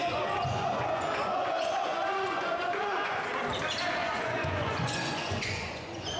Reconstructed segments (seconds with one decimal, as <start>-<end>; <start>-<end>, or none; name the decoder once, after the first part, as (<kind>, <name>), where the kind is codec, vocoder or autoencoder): 0.0-3.3 (vocoder, Vocos); 4.0-6.2